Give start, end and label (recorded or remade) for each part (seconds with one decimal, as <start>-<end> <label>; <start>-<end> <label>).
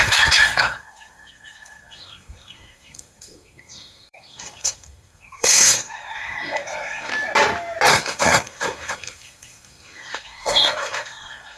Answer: 0.0-7.1 remade; 7.1-7.9 recorded; 7.9-11.6 remade